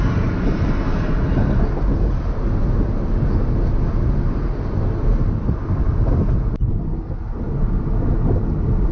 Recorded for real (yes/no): yes